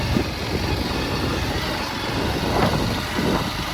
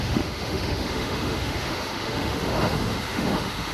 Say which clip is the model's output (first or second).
second